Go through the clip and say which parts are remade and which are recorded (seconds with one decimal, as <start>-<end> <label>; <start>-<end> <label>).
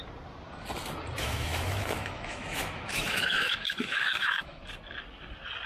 0.0-1.2 recorded; 1.2-4.6 remade; 4.6-5.7 recorded